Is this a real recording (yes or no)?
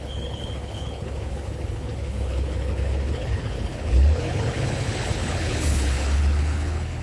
no